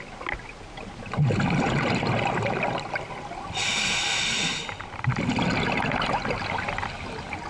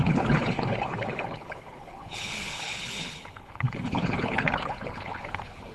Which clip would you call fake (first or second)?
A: second